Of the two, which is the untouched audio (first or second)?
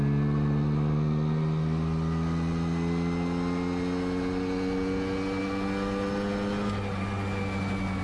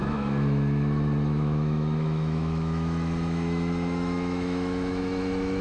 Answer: first